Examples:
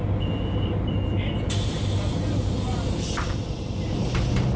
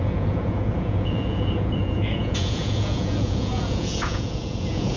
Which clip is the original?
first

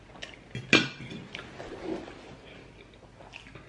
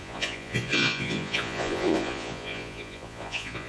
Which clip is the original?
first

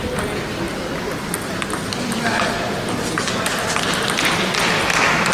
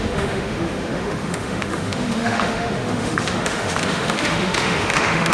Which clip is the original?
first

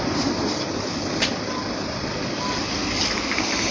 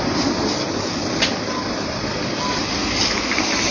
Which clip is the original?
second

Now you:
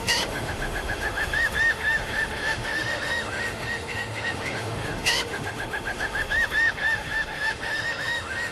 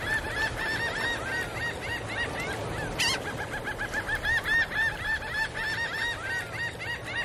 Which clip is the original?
second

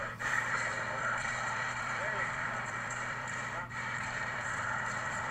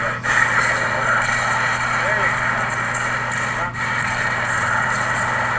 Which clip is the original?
second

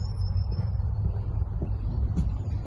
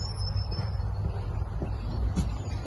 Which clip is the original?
second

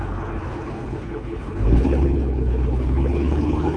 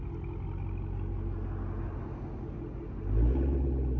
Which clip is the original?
second